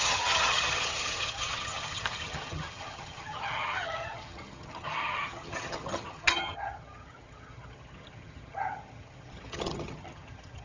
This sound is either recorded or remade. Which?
remade